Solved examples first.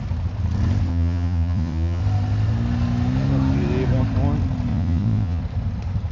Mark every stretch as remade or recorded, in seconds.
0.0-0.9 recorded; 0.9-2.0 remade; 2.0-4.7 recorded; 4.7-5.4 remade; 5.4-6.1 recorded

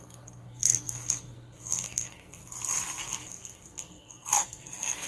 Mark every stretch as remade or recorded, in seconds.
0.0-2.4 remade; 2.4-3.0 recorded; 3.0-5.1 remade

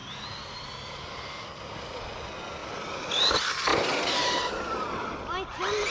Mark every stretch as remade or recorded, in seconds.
0.0-3.7 recorded; 3.7-4.4 remade; 4.4-5.9 recorded